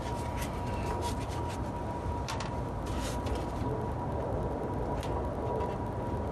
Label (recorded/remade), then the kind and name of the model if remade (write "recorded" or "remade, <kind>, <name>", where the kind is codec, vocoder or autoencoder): recorded